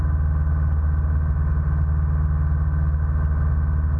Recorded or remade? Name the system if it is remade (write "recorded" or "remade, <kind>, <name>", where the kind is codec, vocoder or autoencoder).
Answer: recorded